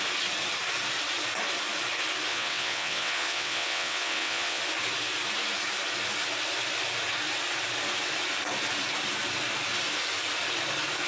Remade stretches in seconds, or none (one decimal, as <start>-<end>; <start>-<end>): 2.3-4.6